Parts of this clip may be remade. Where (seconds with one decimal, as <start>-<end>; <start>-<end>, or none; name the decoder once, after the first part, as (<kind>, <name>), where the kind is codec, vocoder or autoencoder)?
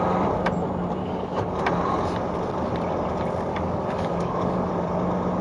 1.0-1.6 (codec, DAC); 3.5-4.7